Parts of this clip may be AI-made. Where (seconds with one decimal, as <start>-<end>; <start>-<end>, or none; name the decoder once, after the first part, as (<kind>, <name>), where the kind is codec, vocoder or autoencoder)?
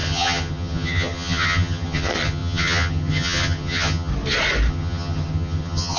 0.0-4.1 (vocoder, HiFi-GAN); 4.7-6.0